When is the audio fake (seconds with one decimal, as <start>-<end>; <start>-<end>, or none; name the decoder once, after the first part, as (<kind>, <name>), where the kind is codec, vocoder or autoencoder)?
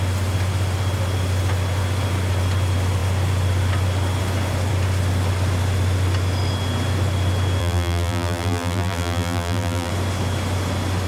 7.6-9.9 (vocoder, BigVGAN v2)